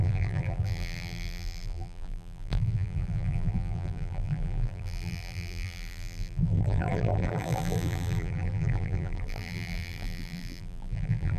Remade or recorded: remade